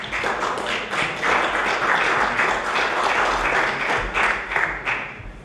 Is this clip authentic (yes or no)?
yes